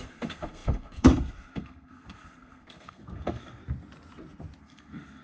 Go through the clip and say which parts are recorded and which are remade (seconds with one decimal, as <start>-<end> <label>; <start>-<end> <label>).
0.0-3.6 remade; 3.6-4.6 recorded; 4.6-5.2 remade